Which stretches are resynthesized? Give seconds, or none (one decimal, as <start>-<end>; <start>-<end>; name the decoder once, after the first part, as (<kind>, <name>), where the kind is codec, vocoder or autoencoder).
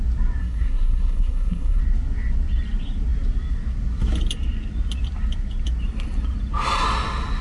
0.4-1.8 (codec, SNAC)